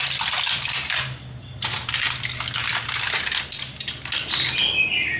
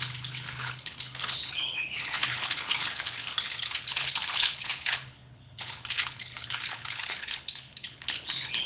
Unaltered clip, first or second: first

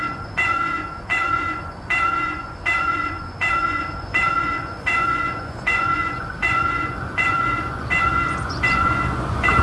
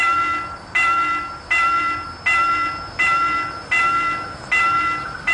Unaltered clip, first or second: second